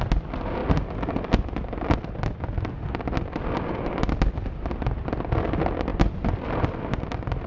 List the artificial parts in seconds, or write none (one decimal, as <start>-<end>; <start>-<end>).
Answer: none